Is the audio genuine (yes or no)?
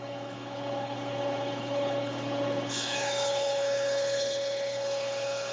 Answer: no